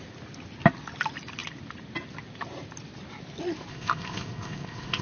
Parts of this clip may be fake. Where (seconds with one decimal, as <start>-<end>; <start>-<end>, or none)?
3.7-5.0